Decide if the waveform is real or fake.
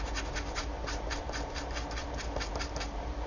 fake